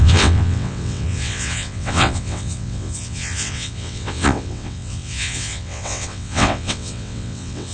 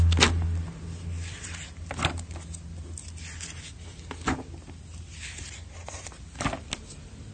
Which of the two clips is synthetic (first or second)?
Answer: first